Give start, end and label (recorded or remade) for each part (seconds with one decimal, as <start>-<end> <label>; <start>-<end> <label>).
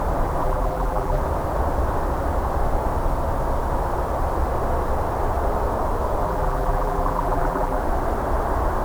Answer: 0.0-0.4 recorded; 0.4-1.2 remade; 1.2-6.2 recorded; 6.2-7.8 remade; 7.8-8.8 recorded